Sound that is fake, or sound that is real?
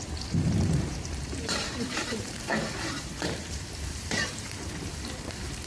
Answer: fake